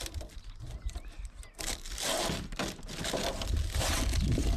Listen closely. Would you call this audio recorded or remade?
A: recorded